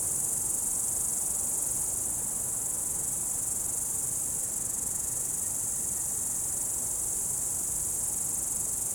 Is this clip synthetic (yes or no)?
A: no